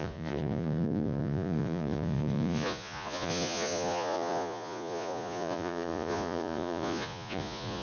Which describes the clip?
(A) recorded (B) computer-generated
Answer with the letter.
B